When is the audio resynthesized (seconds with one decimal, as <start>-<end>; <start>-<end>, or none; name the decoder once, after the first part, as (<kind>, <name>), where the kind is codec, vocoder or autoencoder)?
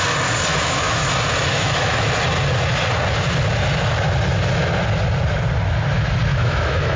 0.5-1.1 (autoencoder, DAC-VAE); 1.5-2.1; 6.3-7.0